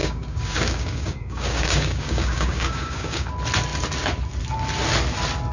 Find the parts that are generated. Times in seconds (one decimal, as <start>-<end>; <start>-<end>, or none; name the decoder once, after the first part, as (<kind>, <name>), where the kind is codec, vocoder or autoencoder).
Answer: 0.0-3.3 (codec, DAC)